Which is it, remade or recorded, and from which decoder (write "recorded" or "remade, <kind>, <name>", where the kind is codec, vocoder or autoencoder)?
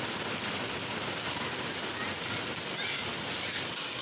recorded